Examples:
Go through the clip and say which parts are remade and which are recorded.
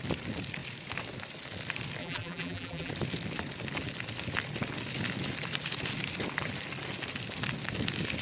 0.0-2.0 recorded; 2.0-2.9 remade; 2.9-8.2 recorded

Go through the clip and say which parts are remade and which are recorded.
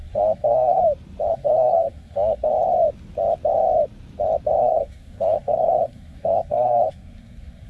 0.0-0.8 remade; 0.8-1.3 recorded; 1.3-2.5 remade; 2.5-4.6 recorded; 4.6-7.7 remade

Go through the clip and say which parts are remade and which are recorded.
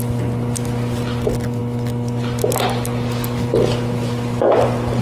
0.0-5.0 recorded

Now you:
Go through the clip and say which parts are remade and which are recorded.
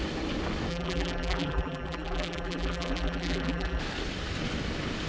0.0-0.7 recorded; 0.7-3.8 remade; 3.8-5.1 recorded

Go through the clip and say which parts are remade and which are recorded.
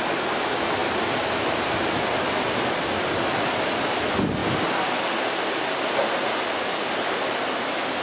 0.0-8.0 recorded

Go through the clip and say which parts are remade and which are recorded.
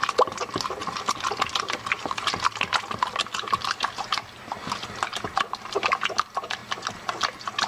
0.0-7.7 recorded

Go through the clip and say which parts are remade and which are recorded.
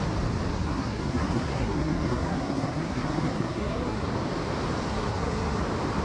0.0-0.5 recorded; 0.5-4.1 remade; 4.1-4.9 recorded; 4.9-5.6 remade; 5.6-6.0 recorded